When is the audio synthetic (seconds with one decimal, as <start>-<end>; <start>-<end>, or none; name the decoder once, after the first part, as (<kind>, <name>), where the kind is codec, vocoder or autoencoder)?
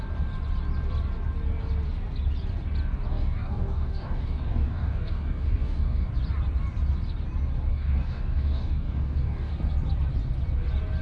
3.1-6.1 (codec, DAC); 7.7-9.5